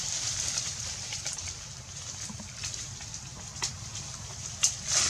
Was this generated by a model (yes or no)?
yes